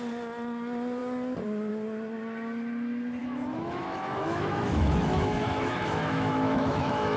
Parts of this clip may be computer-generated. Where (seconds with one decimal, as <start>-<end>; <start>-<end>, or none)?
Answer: 3.2-7.2